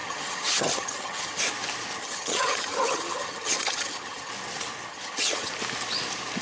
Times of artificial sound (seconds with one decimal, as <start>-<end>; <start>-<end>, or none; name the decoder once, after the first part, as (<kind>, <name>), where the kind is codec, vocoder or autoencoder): 0.0-1.4 (vocoder, HiFi-GAN); 2.0-4.3; 4.9-5.5

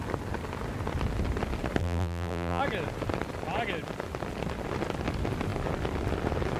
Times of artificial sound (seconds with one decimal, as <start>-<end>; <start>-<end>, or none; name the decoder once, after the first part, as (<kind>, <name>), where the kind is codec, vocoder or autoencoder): 1.8-2.6 (vocoder, BigVGAN v2)

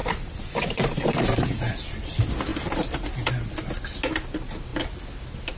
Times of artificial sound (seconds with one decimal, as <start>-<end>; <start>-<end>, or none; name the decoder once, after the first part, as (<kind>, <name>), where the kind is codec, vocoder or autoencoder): 0.0-1.7 (vocoder, BigVGAN v2); 2.5-3.3